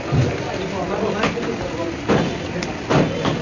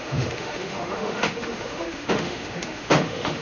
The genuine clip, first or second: first